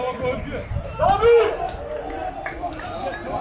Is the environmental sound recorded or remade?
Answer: recorded